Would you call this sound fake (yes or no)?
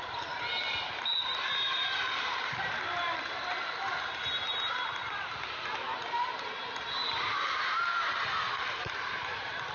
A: yes